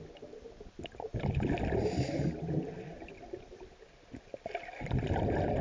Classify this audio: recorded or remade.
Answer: recorded